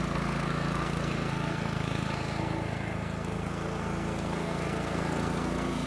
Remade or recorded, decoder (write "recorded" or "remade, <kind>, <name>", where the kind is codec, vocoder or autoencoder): remade, codec, SNAC